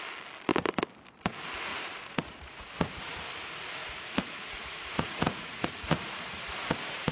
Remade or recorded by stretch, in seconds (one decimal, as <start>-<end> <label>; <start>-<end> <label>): 0.0-1.7 recorded; 1.7-2.9 remade; 2.9-3.8 recorded; 3.8-7.1 remade